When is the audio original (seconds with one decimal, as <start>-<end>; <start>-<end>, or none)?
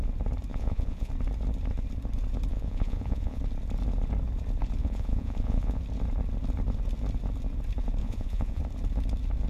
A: 0.0-0.5; 1.1-2.5; 3.4-4.8; 5.8-8.0; 8.6-9.5